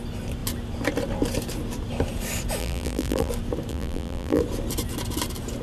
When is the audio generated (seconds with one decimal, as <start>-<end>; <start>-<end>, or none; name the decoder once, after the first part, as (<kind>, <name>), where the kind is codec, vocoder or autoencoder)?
2.6-3.3 (vocoder, BigVGAN v2); 3.7-4.4